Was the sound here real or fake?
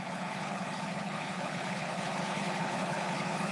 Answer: fake